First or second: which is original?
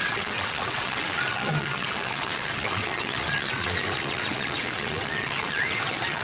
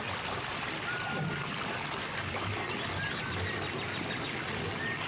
second